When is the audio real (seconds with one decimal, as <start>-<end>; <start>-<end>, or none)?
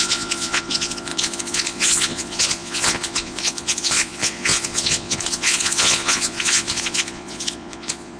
none